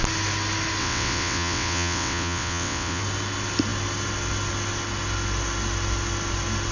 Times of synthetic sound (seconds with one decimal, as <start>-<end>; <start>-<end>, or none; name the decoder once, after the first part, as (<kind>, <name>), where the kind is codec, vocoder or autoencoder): 0.8-3.0 (vocoder, WaveNeXt)